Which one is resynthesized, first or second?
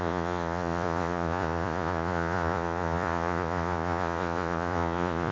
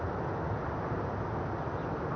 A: first